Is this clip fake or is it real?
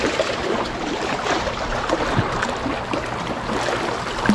real